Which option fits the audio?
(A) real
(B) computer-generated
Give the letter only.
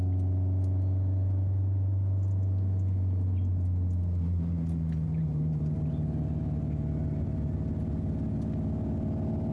A